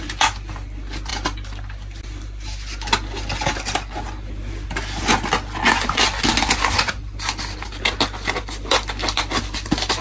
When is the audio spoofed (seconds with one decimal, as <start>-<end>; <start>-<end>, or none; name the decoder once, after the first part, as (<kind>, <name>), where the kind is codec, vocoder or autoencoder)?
none